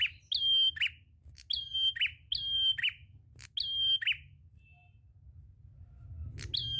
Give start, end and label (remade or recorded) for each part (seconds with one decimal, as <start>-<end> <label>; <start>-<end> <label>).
0.0-6.8 recorded